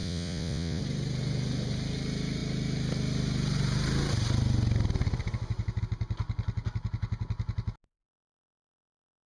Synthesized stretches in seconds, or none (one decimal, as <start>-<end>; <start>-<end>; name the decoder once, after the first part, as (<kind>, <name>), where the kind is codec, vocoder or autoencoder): 0.0-0.8 (vocoder, Vocos)